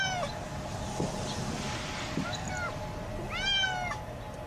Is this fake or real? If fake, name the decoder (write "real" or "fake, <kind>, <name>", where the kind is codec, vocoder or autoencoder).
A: real